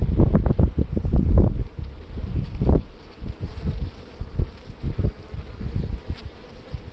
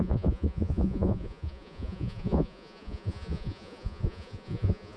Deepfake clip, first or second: second